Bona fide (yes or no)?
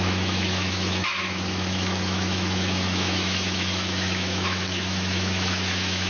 no